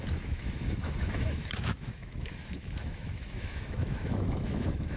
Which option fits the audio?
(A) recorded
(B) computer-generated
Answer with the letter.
B